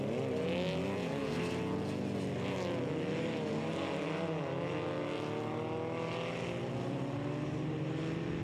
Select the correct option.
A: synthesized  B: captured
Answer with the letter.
B